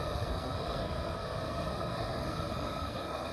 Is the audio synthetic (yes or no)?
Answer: yes